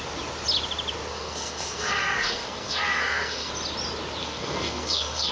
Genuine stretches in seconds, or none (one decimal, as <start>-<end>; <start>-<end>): 0.0-1.1; 3.5-4.2